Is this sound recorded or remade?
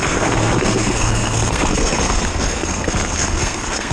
remade